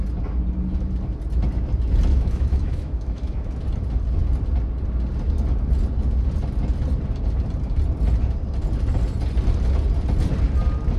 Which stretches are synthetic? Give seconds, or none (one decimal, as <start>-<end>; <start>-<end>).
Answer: 2.1-3.5